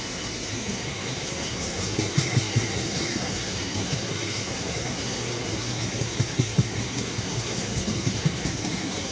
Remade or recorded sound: remade